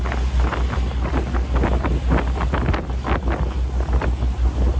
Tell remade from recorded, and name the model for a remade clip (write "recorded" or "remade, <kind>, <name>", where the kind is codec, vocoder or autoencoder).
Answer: recorded